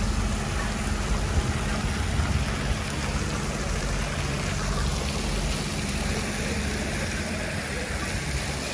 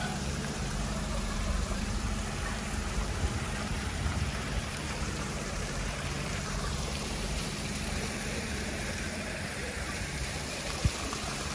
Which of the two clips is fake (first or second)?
second